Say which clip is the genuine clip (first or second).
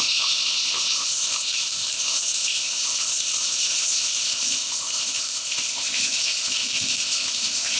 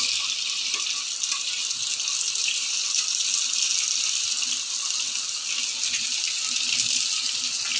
second